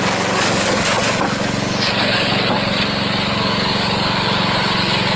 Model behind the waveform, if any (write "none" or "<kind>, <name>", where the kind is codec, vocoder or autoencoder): codec, DAC